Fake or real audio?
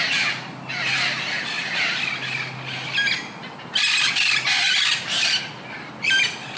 real